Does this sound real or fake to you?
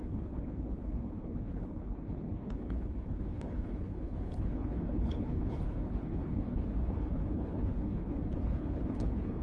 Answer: fake